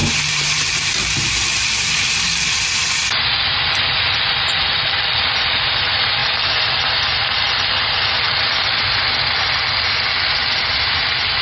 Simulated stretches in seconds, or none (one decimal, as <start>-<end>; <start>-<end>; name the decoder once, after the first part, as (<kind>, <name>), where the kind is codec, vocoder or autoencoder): 0.0-2.6 (vocoder, BigVGAN v2)